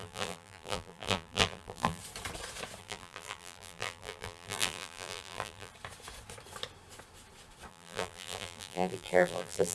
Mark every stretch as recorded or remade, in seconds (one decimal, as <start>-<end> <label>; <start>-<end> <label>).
0.0-2.0 remade; 2.0-2.8 recorded; 2.8-5.7 remade; 5.7-7.7 recorded; 7.7-9.7 remade